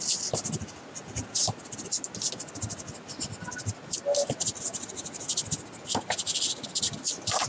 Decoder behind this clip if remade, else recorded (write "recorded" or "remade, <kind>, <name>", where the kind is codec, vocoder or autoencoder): recorded